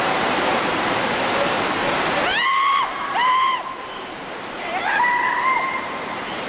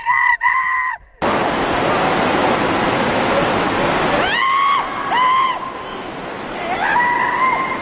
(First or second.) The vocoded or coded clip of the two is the first